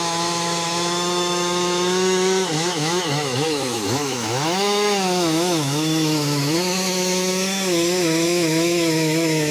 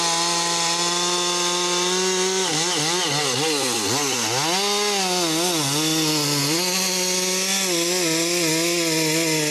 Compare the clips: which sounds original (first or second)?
second